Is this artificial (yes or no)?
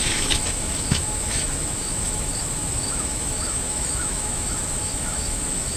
yes